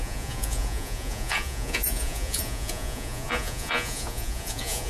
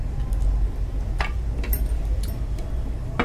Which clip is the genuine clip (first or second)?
second